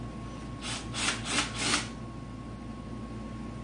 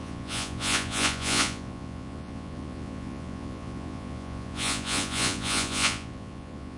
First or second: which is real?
first